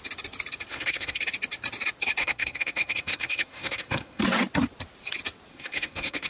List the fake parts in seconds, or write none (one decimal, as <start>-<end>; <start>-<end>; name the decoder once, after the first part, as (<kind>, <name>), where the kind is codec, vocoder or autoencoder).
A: 0.7-1.2 (codec, SNAC); 2.2-4.2; 5.5-6.3